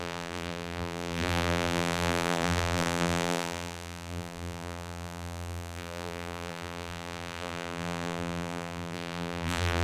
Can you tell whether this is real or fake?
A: fake